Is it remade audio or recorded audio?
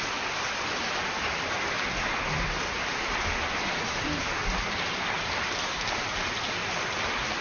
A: recorded